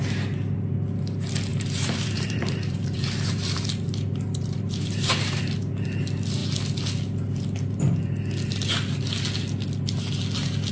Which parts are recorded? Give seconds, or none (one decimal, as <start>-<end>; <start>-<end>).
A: 0.0-1.5; 5.4-10.7